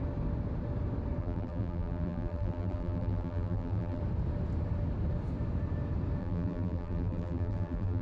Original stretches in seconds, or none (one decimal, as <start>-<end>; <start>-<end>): 0.0-1.2; 4.0-6.2